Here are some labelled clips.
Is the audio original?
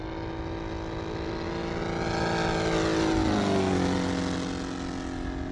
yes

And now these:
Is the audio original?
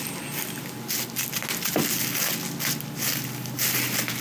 yes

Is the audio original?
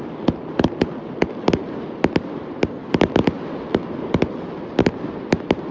yes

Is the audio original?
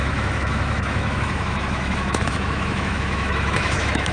no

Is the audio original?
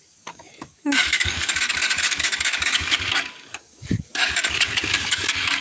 no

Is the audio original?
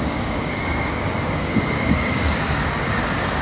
no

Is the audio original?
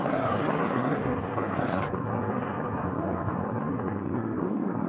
no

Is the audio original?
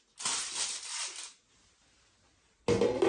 yes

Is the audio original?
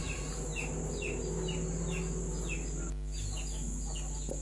yes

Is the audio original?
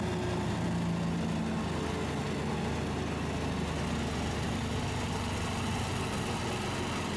yes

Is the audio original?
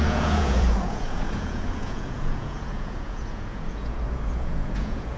no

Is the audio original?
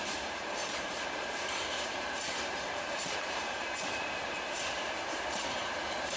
no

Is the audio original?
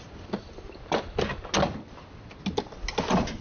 yes